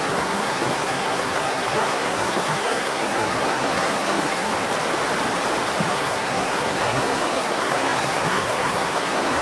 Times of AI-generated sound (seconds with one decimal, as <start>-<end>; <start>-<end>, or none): 0.0-4.5; 5.9-9.4